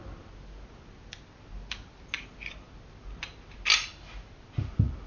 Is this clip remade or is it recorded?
recorded